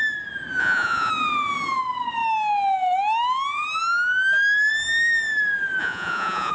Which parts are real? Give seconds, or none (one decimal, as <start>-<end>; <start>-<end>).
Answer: 0.0-0.6; 1.1-5.8